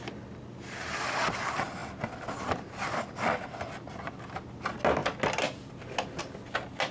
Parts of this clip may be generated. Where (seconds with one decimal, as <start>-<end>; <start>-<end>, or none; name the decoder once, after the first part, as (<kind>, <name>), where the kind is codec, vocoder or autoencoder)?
none